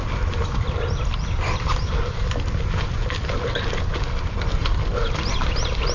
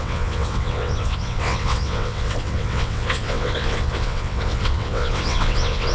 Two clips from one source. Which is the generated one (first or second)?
second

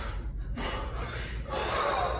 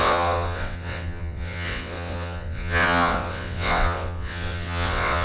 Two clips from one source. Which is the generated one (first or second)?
second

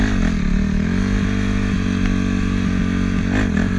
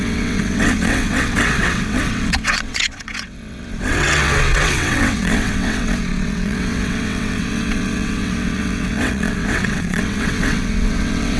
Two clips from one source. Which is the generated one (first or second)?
second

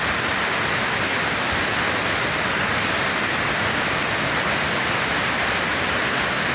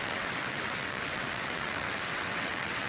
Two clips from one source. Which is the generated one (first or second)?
second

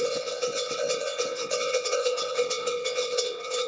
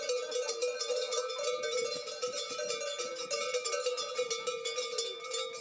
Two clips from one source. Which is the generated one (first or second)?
first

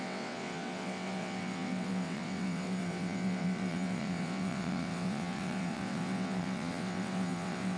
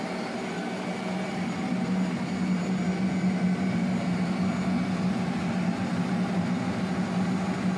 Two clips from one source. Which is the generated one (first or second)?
first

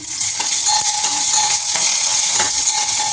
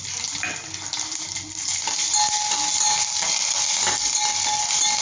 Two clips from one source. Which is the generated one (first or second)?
first